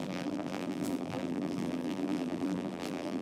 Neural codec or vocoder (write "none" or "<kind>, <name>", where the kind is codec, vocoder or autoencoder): vocoder, BigVGAN v2